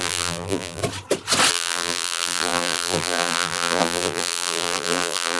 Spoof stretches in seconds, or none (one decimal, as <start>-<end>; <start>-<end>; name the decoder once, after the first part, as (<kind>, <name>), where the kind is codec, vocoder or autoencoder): 0.0-0.8 (vocoder, BigVGAN v2); 1.5-5.4